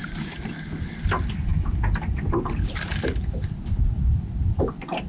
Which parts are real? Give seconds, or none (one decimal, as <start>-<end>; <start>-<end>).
0.5-5.1